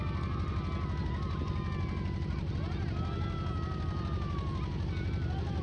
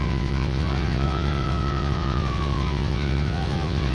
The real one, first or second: first